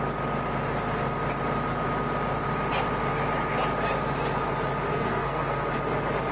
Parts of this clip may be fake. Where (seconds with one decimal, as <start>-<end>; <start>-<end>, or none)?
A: 4.9-5.7